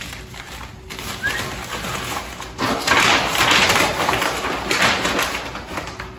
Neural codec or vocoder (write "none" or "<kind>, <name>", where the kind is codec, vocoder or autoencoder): none